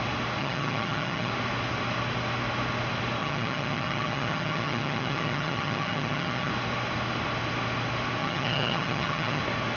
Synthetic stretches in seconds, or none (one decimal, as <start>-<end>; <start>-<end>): 0.4-1.3; 3.2-6.5; 8.2-9.4